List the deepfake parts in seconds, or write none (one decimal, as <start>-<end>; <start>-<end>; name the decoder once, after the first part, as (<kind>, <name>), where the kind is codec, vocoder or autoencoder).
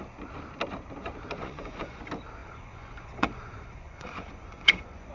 1.4-2.0 (vocoder, Vocos); 2.4-5.1